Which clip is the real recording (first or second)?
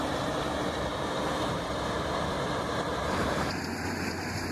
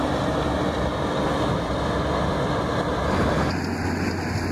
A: second